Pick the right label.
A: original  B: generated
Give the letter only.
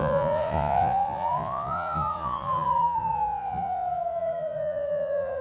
B